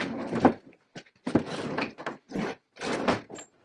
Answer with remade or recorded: recorded